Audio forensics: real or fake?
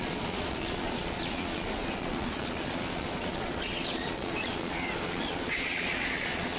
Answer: fake